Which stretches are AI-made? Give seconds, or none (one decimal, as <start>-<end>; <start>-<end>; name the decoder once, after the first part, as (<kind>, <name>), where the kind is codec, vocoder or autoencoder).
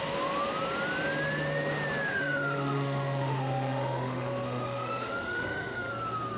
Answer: 2.1-5.9 (autoencoder, DAC-VAE)